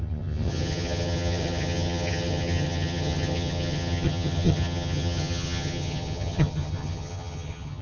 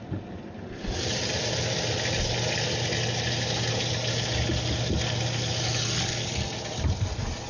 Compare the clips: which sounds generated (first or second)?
first